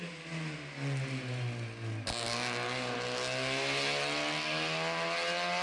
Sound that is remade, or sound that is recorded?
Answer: recorded